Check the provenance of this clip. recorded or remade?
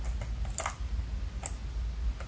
recorded